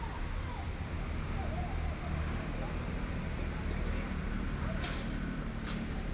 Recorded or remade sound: recorded